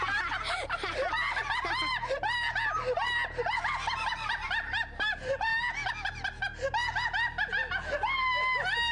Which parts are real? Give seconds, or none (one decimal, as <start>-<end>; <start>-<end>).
0.0-8.9